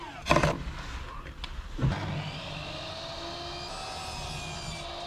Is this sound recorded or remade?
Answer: recorded